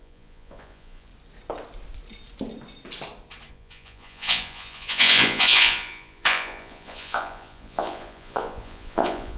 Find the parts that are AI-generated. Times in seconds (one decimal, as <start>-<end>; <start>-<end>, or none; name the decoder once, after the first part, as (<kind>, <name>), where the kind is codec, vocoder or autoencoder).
0.0-1.1 (vocoder, Vocos); 3.5-9.4